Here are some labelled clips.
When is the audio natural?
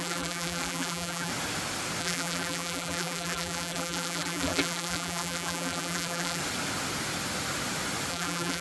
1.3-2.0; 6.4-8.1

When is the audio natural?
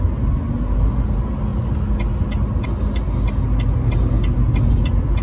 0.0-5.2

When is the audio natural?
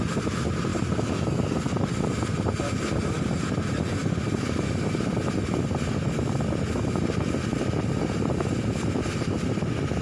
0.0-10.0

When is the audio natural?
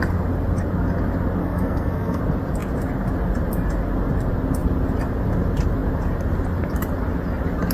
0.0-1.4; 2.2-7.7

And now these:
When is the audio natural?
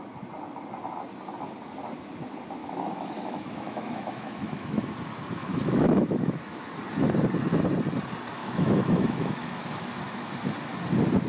0.0-2.6; 4.8-5.4; 6.7-8.4; 10.3-11.3